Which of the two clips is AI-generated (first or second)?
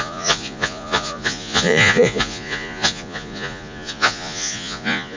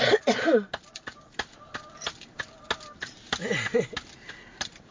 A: first